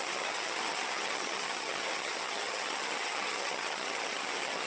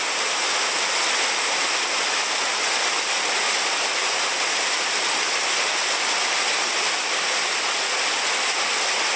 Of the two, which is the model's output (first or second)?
first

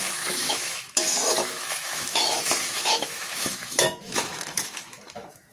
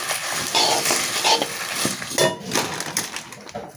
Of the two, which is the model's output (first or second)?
first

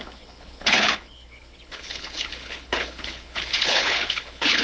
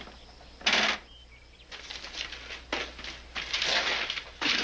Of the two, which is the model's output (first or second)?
first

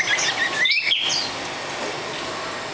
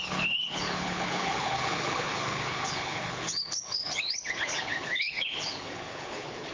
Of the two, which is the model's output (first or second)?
second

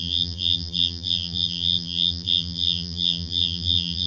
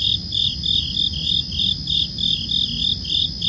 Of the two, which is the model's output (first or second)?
first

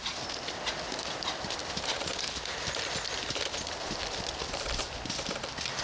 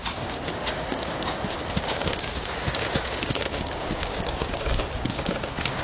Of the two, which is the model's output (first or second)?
second